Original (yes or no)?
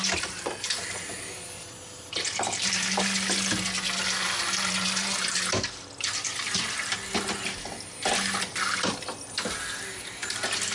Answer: yes